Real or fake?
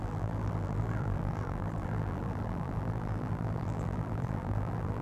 fake